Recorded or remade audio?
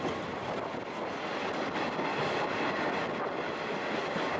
recorded